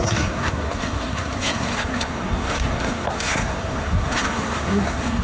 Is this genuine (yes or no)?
no